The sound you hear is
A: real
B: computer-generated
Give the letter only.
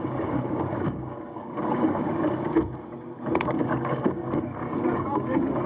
B